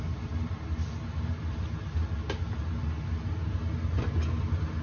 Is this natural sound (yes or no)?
yes